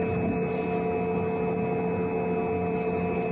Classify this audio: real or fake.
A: real